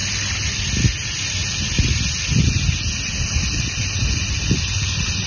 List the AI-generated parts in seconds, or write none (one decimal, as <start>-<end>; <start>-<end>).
none

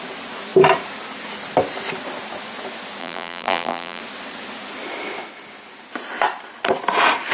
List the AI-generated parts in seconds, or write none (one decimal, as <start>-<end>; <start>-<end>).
3.0-4.0